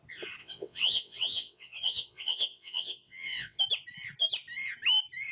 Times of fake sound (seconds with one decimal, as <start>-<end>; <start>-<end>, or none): 0.4-3.6